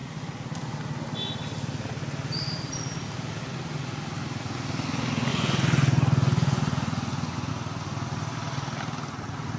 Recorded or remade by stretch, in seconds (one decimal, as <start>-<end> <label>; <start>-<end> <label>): 0.0-5.3 recorded; 5.3-7.5 remade; 7.5-9.6 recorded